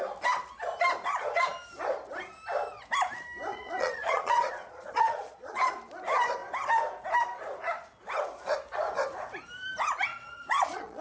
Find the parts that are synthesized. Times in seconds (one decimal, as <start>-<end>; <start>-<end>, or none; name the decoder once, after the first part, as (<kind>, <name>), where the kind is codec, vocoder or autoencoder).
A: 3.5-5.7 (vocoder, Vocos); 10.1-11.0